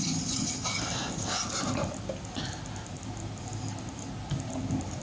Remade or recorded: recorded